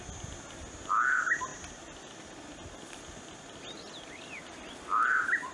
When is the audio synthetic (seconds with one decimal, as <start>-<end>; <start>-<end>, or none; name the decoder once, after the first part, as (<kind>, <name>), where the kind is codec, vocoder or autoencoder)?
none